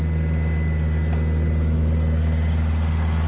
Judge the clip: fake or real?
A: real